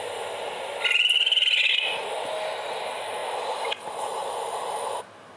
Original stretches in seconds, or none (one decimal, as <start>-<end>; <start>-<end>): 0.0-3.2; 5.0-5.4